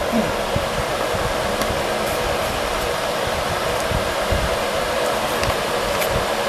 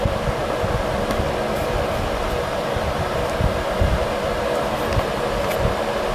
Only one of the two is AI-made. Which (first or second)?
first